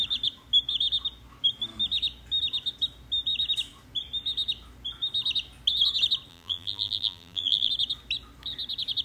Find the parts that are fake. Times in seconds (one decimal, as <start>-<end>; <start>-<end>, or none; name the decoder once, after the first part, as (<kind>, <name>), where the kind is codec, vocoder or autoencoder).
6.3-7.7 (vocoder, BigVGAN v2)